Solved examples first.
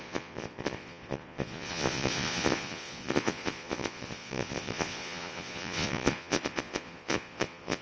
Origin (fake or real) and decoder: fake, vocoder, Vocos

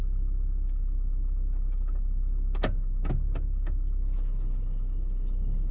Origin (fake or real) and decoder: real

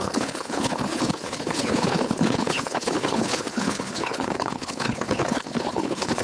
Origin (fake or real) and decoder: fake, codec, HILCodec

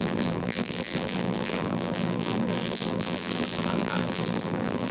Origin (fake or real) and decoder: fake, vocoder, BigVGAN v2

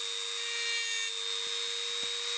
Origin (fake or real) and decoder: real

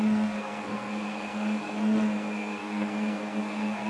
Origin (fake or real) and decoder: fake, codec, SNAC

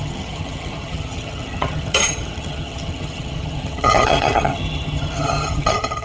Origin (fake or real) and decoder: fake, vocoder, HiFi-GAN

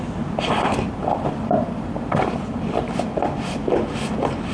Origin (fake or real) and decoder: fake, vocoder, BigVGAN v2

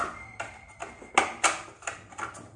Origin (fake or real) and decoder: real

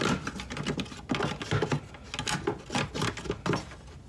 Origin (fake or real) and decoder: real